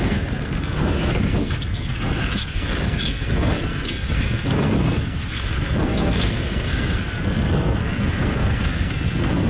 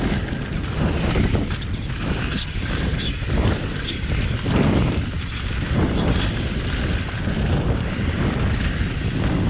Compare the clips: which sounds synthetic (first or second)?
first